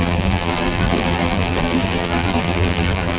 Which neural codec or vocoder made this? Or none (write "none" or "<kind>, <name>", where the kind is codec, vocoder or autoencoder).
vocoder, BigVGAN v2